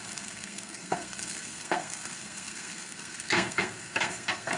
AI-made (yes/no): yes